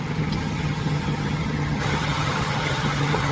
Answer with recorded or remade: remade